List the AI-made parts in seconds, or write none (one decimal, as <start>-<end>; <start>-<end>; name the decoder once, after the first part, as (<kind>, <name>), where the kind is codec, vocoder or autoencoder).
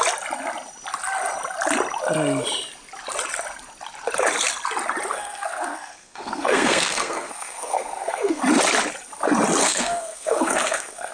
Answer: 5.1-8.4 (codec, SNAC); 9.6-11.1